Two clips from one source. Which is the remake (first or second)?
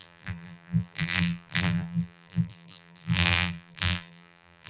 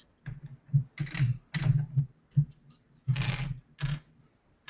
first